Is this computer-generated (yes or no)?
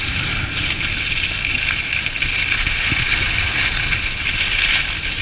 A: no